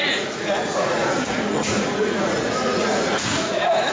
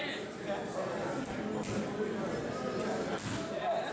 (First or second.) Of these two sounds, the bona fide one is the second